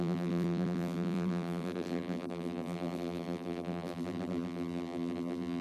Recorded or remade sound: remade